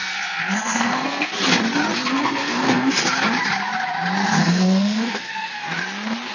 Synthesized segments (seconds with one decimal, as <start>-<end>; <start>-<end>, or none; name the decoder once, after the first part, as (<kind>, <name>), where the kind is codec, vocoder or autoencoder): 0.0-1.3 (codec, SNAC); 2.1-2.9; 4.4-5.6